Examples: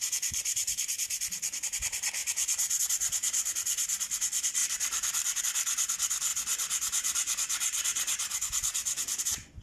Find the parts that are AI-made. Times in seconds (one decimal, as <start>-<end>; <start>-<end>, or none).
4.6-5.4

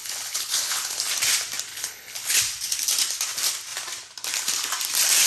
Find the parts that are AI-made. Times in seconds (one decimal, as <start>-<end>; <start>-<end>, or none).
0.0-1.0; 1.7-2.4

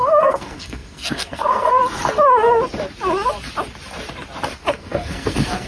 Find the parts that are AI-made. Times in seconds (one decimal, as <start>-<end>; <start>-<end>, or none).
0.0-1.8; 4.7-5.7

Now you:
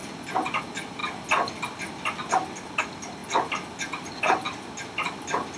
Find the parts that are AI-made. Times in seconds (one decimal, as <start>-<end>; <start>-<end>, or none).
none